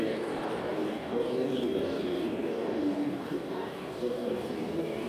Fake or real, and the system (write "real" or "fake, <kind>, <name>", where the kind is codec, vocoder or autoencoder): fake, codec, DAC